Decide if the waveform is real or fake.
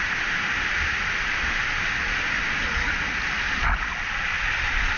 real